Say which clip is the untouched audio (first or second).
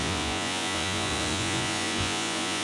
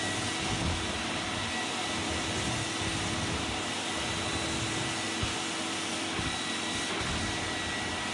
second